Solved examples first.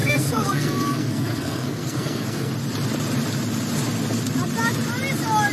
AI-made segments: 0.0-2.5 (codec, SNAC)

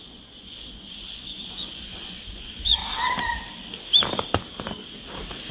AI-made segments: 0.0-2.8 (vocoder, Vocos)